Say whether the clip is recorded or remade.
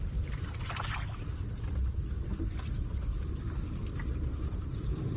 recorded